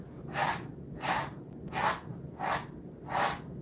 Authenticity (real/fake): real